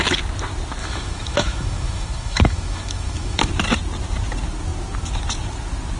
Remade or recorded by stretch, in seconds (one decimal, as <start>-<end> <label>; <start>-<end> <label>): 0.0-0.8 recorded; 0.8-3.5 remade; 3.5-6.0 recorded

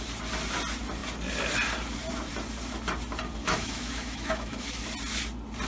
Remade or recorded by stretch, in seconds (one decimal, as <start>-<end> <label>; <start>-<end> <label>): 0.0-3.4 recorded; 3.4-4.8 remade; 4.8-5.7 recorded